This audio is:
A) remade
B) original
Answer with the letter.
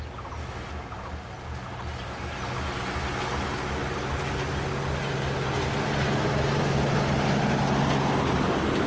B